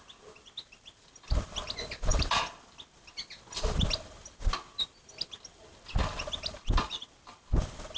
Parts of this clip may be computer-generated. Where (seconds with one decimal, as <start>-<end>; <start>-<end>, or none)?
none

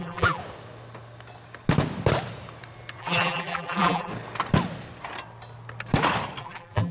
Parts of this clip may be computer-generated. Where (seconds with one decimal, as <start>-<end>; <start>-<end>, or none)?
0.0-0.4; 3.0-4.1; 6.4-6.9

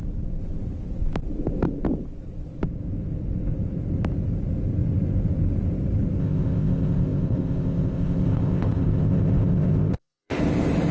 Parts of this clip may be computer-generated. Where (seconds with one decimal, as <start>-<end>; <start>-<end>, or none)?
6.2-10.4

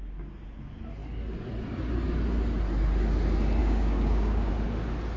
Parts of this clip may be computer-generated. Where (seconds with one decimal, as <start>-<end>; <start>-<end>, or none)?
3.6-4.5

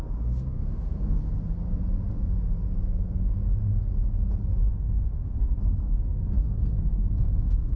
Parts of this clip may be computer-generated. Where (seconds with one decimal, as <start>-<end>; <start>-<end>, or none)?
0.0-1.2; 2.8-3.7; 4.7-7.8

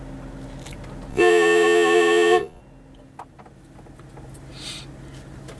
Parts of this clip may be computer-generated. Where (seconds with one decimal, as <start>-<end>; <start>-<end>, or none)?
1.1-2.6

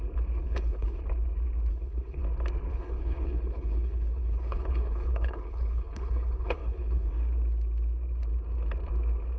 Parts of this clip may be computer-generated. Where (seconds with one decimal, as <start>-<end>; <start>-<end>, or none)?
0.4-1.0; 1.7-2.2; 2.7-7.1